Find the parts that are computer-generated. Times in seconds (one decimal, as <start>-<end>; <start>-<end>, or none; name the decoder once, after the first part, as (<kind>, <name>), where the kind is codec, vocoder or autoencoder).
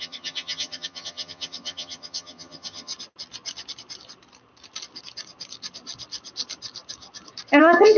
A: 0.0-2.9 (vocoder, HiFi-GAN); 7.6-8.0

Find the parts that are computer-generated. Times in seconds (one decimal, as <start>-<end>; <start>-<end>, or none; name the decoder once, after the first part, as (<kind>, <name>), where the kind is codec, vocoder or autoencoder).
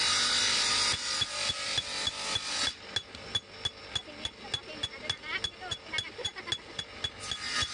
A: none